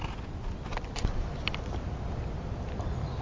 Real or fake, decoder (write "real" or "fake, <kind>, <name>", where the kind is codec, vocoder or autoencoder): real